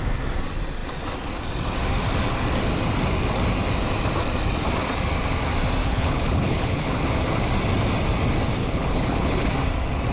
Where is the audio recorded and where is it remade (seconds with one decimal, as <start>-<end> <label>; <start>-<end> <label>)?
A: 0.0-5.8 recorded; 5.8-7.0 remade; 7.0-8.6 recorded; 8.6-9.5 remade; 9.5-10.1 recorded